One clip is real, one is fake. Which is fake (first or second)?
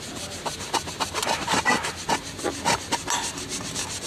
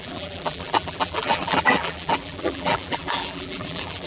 second